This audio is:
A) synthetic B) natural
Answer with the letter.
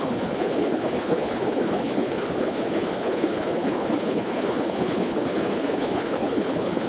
A